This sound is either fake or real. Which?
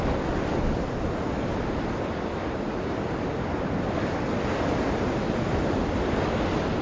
real